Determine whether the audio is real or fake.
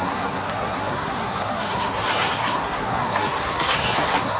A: fake